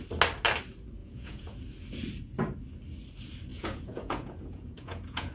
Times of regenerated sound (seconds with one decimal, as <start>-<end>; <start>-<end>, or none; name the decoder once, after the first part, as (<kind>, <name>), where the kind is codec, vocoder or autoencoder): 1.0-1.6 (vocoder, Vocos); 3.5-5.3